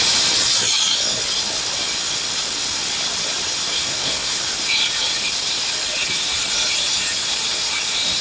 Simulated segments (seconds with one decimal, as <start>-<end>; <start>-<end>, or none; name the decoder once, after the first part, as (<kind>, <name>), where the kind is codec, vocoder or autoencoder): 3.7-4.4 (codec, SNAC)

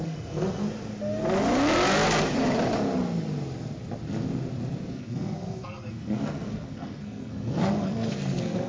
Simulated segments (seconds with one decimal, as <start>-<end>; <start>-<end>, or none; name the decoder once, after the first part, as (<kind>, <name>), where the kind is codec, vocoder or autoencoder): 0.0-0.6 (codec, SNAC); 4.9-8.7